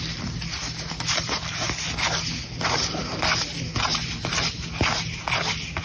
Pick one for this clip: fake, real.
real